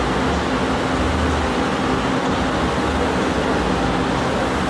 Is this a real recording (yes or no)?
yes